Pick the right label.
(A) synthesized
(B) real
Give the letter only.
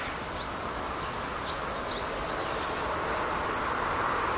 B